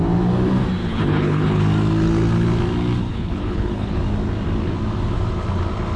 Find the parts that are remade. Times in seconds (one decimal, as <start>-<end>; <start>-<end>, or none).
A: 0.8-1.6; 3.1-4.0